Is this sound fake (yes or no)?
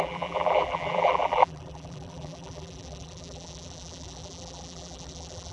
yes